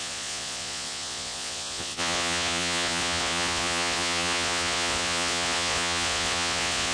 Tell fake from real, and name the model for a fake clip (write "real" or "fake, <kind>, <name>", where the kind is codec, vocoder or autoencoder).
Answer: fake, vocoder, Vocos